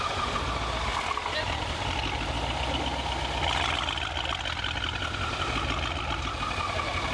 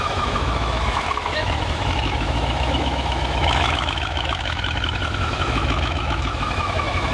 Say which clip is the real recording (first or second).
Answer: first